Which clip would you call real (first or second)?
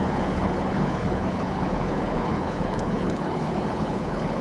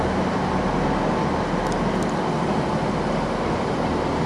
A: second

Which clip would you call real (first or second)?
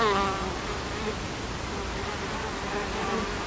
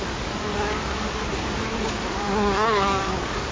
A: first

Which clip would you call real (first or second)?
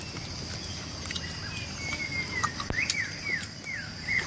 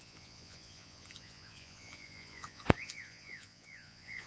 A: first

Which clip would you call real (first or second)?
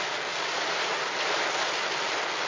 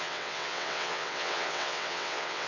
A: first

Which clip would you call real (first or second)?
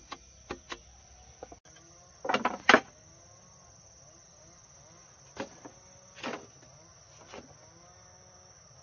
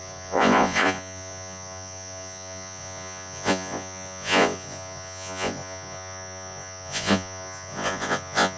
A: first